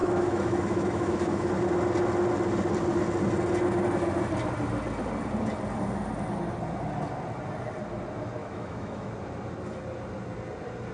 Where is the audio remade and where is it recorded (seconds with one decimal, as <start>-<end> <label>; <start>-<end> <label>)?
0.0-1.5 remade; 1.5-8.4 recorded; 8.4-9.1 remade; 9.1-10.9 recorded